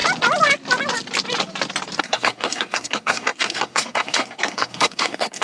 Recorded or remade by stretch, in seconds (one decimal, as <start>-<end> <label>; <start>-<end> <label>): 0.0-2.0 recorded; 2.0-5.4 remade